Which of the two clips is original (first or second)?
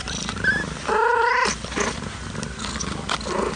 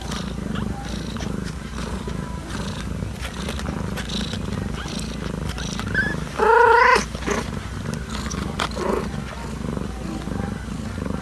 second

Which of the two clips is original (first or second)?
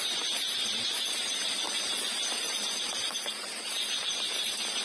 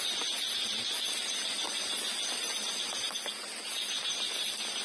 second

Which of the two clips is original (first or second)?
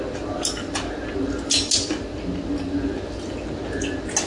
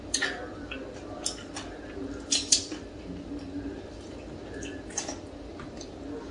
first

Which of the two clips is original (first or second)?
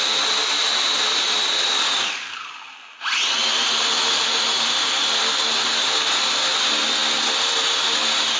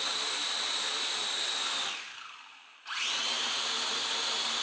first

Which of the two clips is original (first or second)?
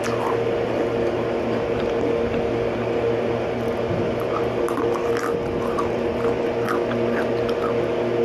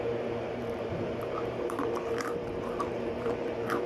first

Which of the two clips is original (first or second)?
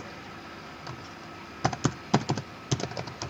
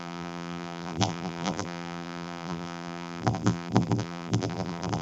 first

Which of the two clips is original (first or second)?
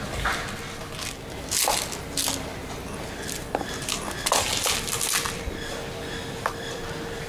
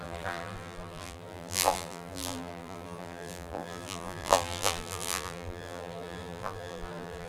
first